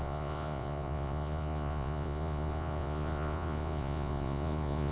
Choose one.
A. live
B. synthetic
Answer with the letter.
B